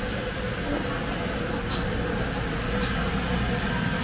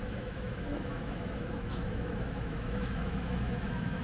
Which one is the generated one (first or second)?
second